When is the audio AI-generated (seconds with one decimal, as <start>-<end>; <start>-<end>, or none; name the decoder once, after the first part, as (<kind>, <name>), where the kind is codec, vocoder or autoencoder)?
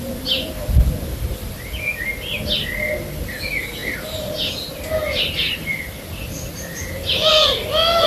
none